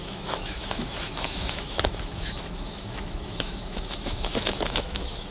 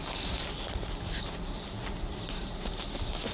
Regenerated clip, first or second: first